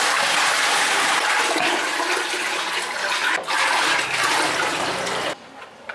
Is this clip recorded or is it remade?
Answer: recorded